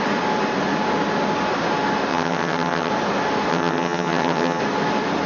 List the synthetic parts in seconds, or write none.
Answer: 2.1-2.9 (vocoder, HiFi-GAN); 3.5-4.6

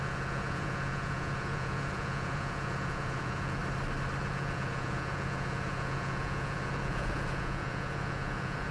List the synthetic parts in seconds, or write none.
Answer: 0.0-3.6 (vocoder, Vocos); 4.2-8.7

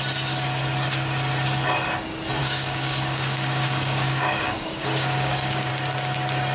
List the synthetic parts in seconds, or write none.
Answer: 2.4-5.7 (codec, DAC)

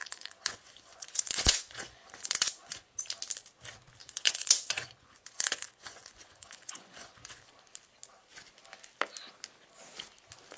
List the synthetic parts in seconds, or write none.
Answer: 0.0-2.9 (vocoder, Vocos); 4.0-7.4